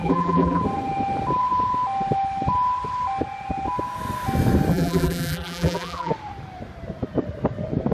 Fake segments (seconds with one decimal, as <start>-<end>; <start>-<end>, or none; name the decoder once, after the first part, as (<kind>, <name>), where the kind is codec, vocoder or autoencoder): 0.0-0.6 (vocoder, BigVGAN v2); 4.7-6.1